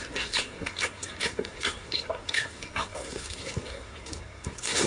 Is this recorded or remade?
remade